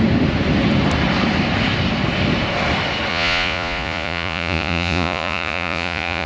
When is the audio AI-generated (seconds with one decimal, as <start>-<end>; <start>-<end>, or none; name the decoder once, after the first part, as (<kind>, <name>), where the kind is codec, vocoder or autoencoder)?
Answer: 3.1-6.3 (vocoder, Vocos)